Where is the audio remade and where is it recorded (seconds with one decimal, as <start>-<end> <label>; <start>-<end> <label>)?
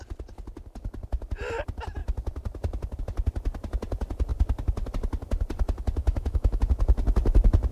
0.0-6.0 recorded; 6.0-6.6 remade; 6.6-7.7 recorded